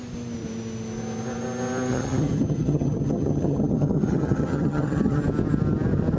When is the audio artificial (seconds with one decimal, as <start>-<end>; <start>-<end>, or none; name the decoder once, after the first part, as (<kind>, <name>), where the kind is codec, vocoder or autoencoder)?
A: 1.9-5.2 (vocoder, HiFi-GAN)